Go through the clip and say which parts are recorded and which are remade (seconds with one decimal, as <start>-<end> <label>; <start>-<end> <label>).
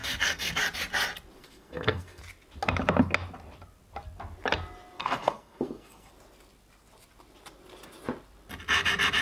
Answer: 0.0-0.6 remade; 0.6-1.4 recorded; 1.4-2.2 remade; 2.2-5.0 recorded; 5.0-6.1 remade; 6.1-9.2 recorded